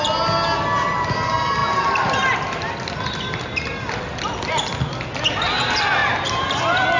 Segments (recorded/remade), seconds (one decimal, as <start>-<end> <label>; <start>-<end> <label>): 0.0-7.0 recorded